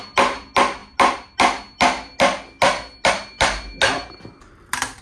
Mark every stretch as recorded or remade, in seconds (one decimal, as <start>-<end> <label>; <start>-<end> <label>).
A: 0.0-5.0 recorded